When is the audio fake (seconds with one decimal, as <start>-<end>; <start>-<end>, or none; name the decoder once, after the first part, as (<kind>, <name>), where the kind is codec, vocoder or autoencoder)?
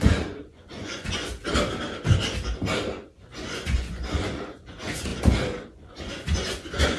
0.0-1.3 (vocoder, Vocos); 2.9-7.0